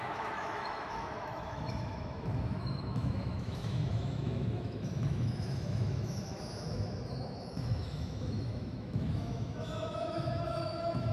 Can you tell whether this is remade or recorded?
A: remade